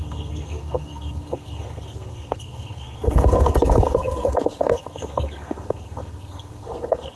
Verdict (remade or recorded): remade